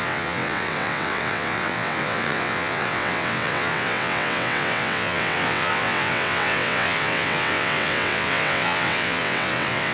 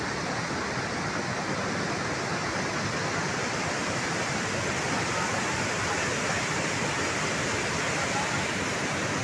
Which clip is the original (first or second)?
second